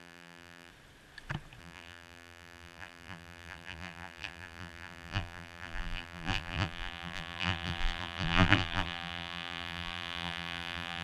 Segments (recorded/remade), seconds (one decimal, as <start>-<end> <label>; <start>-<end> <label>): 0.0-0.7 remade; 0.7-1.6 recorded; 1.6-11.0 remade